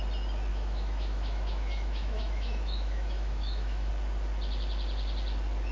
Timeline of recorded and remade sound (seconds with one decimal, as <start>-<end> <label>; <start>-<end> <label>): 0.0-0.5 recorded; 0.5-3.9 remade; 3.9-5.7 recorded